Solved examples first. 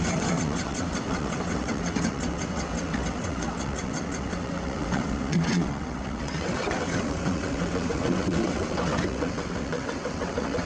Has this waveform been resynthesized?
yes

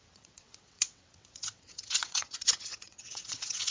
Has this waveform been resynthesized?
yes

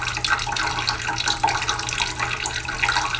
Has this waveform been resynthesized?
no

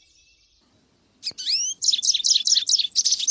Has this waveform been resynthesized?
no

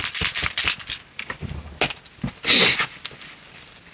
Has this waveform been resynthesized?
no